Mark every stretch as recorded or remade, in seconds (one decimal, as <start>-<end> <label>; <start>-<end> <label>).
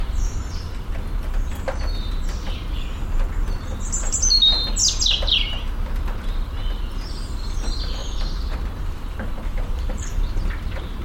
0.0-0.9 remade; 0.9-8.0 recorded; 8.0-10.0 remade; 10.0-11.0 recorded